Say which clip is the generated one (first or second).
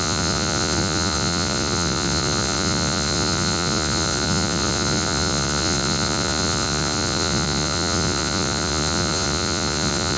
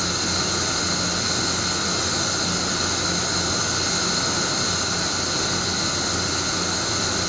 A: first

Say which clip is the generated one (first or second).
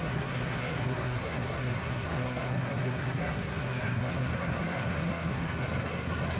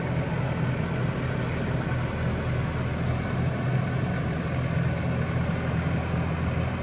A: first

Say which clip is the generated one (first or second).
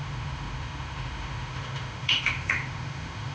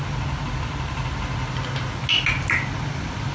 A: first